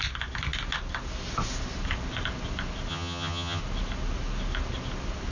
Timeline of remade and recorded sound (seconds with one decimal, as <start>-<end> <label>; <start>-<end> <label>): 0.0-2.9 recorded; 2.9-3.6 remade; 3.6-5.3 recorded